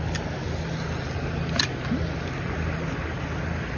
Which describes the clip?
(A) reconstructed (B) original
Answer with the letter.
B